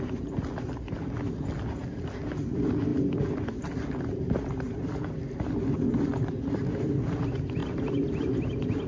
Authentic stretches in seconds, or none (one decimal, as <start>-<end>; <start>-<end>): 0.0-8.9

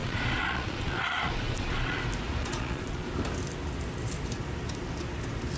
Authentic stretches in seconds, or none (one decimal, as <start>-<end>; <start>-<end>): 2.0-2.4; 3.1-5.6

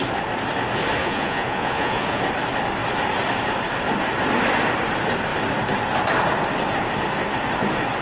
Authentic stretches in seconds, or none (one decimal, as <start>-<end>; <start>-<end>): 0.0-1.0; 2.2-8.0

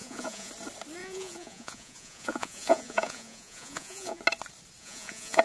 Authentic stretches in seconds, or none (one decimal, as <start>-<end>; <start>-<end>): 0.5-1.0; 4.2-4.8